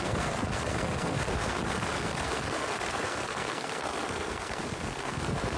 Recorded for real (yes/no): no